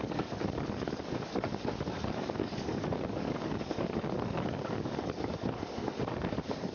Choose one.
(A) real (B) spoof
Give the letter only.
B